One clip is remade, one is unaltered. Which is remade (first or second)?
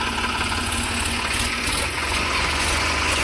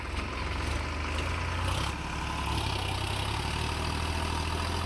first